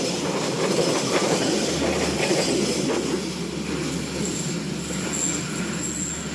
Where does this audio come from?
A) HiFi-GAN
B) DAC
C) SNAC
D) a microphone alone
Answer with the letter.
D